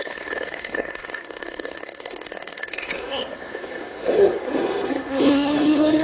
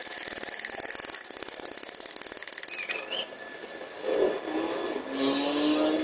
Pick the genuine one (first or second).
second